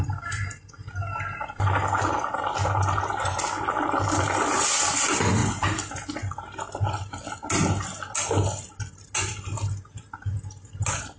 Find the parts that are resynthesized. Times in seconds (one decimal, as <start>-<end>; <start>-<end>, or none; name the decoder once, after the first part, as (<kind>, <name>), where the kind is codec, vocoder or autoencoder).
none